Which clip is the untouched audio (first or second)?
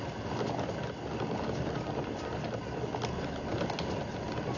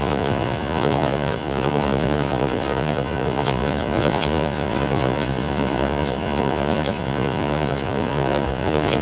first